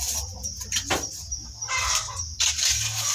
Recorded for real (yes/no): yes